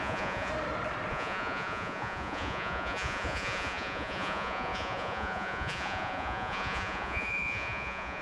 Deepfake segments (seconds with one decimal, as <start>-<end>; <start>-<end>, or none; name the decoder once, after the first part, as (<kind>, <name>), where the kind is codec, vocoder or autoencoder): 0.0-0.5 (vocoder, Vocos); 1.1-8.2